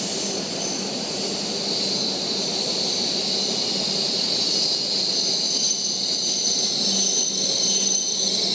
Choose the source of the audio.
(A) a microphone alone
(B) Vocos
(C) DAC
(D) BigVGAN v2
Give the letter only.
A